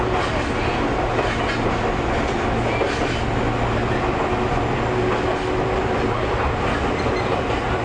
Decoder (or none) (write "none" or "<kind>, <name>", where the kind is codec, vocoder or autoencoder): none